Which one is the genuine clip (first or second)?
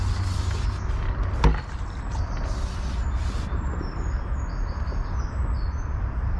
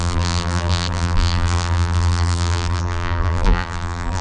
first